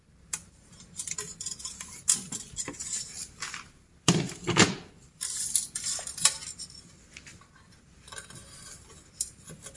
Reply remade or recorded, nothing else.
remade